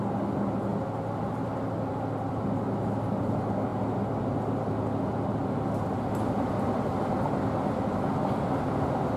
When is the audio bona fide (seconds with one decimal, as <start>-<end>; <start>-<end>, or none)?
0.0-9.2